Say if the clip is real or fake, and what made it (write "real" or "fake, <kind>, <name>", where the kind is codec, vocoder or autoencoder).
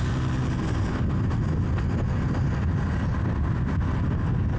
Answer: real